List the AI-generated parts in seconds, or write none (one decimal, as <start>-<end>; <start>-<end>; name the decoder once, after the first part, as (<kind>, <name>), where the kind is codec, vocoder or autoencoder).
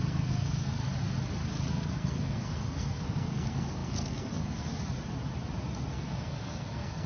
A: 0.0-0.8 (codec, SNAC); 1.7-4.7; 5.9-7.1